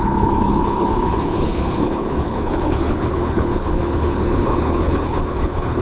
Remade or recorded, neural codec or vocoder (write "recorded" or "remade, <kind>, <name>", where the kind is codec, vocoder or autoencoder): remade, codec, HILCodec